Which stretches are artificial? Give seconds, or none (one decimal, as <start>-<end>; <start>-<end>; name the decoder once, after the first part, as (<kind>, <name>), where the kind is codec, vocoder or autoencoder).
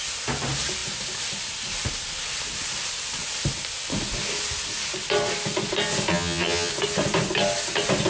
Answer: 6.1-6.7 (vocoder, HiFi-GAN)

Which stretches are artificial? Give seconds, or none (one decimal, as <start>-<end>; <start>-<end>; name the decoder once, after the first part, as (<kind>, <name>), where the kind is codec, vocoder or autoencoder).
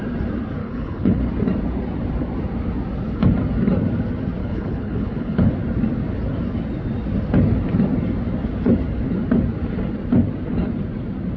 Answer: 0.6-1.3 (codec, HILCodec); 4.4-5.5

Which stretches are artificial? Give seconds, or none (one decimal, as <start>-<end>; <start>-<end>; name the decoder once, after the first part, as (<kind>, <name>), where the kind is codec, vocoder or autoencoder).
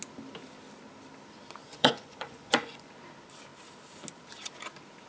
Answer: 1.6-2.9 (vocoder, Vocos)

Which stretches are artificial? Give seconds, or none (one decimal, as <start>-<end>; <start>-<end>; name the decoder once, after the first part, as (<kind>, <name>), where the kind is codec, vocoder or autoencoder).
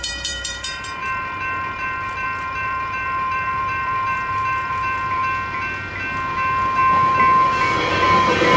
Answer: 0.0-5.2 (vocoder, BigVGAN v2)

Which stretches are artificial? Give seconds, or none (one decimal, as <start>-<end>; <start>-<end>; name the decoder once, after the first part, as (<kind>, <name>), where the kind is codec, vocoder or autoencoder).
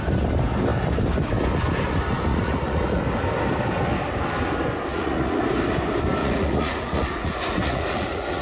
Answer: 2.3-3.0 (vocoder, Vocos); 4.9-5.4; 6.2-8.4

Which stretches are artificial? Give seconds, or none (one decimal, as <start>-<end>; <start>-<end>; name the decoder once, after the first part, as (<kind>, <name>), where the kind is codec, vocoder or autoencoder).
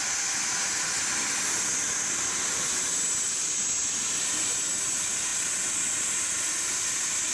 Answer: none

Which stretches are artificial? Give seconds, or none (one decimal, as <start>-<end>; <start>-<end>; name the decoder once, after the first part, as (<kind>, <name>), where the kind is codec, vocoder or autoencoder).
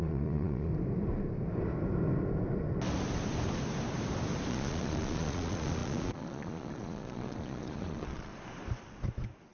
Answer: 0.0-0.7 (vocoder, Vocos); 4.5-8.3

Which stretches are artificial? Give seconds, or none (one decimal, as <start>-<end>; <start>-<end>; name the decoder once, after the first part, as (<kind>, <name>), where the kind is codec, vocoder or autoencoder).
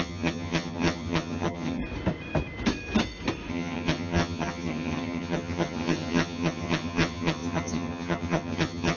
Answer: 0.0-1.8 (vocoder, HiFi-GAN); 3.5-9.0